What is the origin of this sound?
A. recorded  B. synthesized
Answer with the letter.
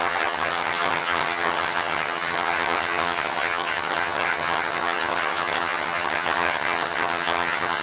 B